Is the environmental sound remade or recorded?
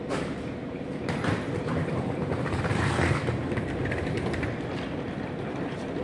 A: remade